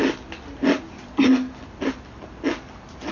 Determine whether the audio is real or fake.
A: real